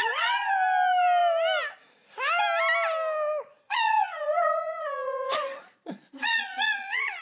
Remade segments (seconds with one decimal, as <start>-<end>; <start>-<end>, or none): 0.0-0.5; 3.5-7.2